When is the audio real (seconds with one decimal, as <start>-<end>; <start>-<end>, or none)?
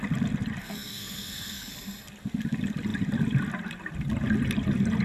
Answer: 0.0-0.6; 1.7-5.0